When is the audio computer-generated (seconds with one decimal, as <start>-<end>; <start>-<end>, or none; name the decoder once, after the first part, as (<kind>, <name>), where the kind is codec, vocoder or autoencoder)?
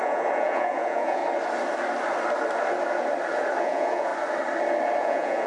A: 0.0-1.2 (vocoder, Vocos); 3.6-4.1; 5.0-5.5